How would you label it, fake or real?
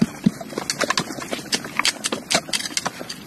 real